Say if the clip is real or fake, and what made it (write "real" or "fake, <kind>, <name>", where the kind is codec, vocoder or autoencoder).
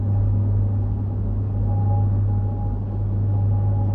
real